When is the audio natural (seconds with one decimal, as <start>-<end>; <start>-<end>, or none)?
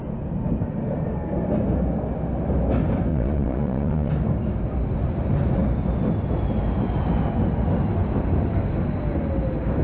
0.0-3.1; 4.1-9.8